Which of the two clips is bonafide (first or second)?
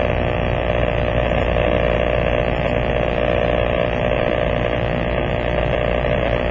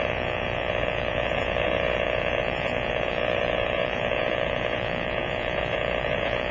first